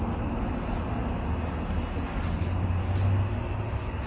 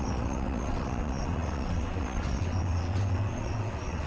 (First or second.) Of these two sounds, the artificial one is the second